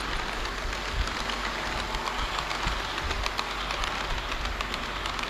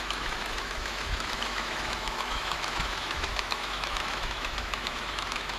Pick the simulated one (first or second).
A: second